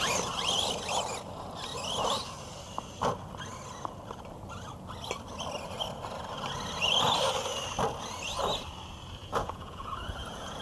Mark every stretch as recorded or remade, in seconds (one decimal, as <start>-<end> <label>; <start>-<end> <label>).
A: 0.0-9.2 recorded; 9.2-10.6 remade